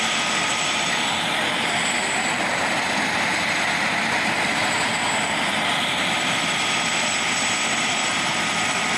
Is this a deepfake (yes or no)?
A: no